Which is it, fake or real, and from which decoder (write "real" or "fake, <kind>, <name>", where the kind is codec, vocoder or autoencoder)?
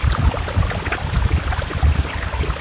real